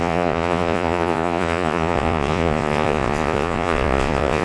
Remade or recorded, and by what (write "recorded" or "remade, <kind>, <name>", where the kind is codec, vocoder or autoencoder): remade, vocoder, Vocos